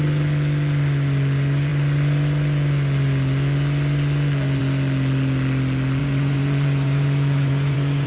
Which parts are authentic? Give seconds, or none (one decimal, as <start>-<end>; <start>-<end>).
0.0-6.0